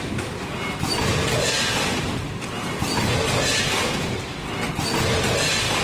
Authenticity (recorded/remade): recorded